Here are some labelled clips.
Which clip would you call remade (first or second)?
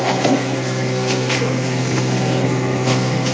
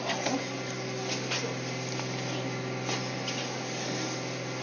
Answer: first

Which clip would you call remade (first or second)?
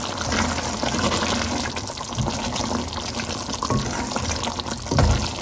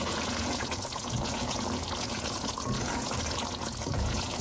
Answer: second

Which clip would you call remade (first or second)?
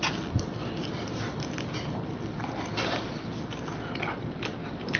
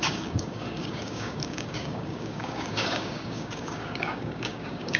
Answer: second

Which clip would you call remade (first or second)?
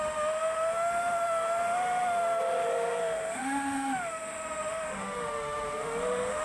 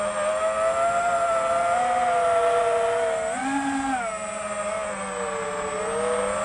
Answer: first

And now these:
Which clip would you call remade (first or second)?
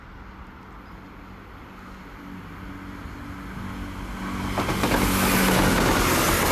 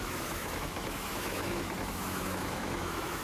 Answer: second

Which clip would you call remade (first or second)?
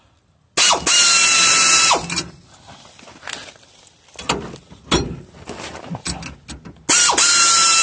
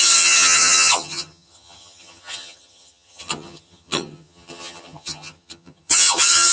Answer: second